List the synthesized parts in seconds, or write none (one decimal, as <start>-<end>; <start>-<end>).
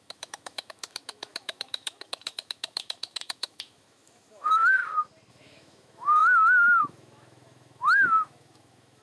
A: 0.0-4.8; 5.3-9.0